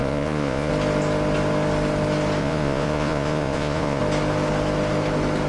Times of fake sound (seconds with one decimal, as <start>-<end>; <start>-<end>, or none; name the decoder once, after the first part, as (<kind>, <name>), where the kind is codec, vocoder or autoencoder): 0.0-0.7 (vocoder, Vocos); 2.4-4.0